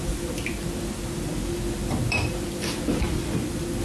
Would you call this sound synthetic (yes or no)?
no